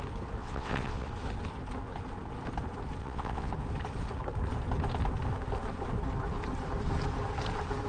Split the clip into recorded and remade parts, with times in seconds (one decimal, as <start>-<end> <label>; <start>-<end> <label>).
0.0-0.4 recorded; 0.4-1.1 remade; 1.1-3.0 recorded; 3.0-3.5 remade; 3.5-7.9 recorded